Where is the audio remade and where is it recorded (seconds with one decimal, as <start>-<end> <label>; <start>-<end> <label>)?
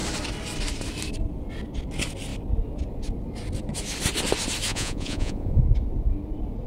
0.0-4.7 recorded; 4.7-5.6 remade; 5.6-6.7 recorded